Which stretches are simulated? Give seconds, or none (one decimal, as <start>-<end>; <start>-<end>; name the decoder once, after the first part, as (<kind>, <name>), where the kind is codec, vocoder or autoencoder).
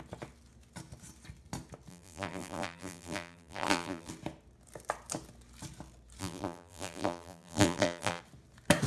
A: 1.9-4.1 (vocoder, BigVGAN v2); 6.2-8.2